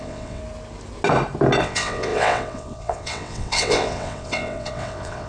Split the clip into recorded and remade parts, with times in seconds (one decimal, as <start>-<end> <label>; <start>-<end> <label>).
0.0-0.4 remade; 0.4-1.6 recorded; 1.6-5.3 remade